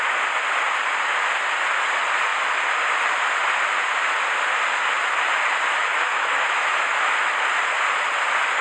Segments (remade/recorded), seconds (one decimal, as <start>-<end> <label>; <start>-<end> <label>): 0.0-5.8 recorded; 5.8-7.3 remade; 7.3-8.6 recorded